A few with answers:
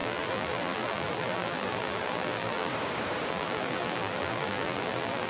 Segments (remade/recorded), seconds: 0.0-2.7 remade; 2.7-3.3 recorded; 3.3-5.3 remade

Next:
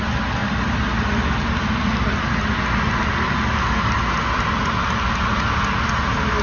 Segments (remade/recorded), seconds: 0.0-6.4 recorded

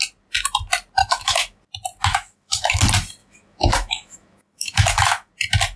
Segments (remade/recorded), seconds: 0.0-1.0 recorded; 1.0-1.6 remade; 1.6-2.1 recorded; 2.1-2.8 remade; 2.8-3.2 recorded; 3.2-5.3 remade; 5.3-5.8 recorded

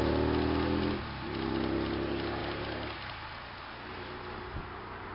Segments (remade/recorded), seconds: 0.0-5.1 recorded